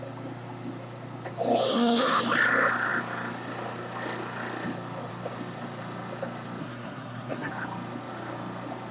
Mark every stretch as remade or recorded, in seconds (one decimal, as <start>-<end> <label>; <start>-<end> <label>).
0.0-1.7 recorded; 1.7-2.2 remade; 2.2-6.6 recorded; 6.6-7.5 remade; 7.5-8.9 recorded